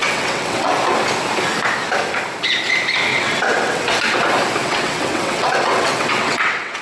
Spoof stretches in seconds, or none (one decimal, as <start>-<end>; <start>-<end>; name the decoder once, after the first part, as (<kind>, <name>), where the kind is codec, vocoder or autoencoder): 0.0-0.7 (vocoder, WaveNeXt); 3.1-4.0; 4.6-6.8